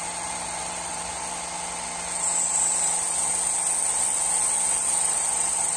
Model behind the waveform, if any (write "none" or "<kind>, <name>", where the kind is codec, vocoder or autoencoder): none